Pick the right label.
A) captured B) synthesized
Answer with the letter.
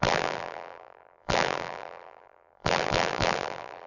B